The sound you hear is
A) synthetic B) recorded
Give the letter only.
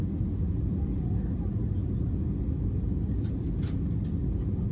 B